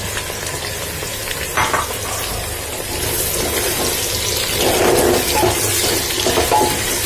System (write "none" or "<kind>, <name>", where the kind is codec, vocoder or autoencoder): none